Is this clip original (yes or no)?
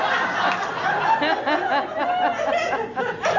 yes